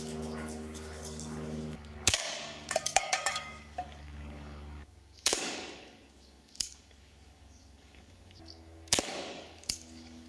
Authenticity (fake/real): fake